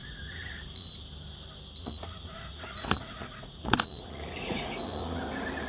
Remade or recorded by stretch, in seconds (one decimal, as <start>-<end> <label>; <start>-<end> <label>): 0.0-0.9 remade; 0.9-1.8 recorded; 1.8-5.2 remade; 5.2-5.7 recorded